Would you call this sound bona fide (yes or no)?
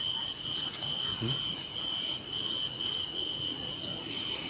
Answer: no